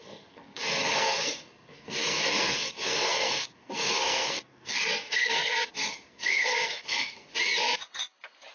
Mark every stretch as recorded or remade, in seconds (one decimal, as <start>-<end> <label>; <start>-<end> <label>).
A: 0.0-7.3 remade; 7.3-8.5 recorded